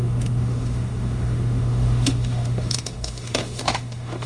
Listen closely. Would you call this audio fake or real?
fake